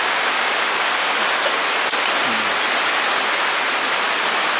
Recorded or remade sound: recorded